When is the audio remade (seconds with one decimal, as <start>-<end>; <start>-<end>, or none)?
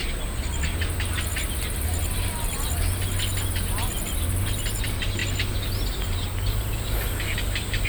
none